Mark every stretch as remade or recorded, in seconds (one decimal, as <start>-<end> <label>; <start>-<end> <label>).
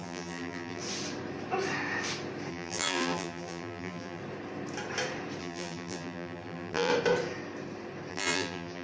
0.0-0.8 remade; 0.8-2.5 recorded; 2.5-4.2 remade; 4.2-5.4 recorded; 5.4-6.9 remade; 6.9-8.1 recorded; 8.1-8.8 remade